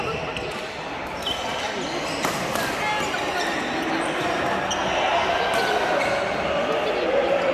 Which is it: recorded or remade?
recorded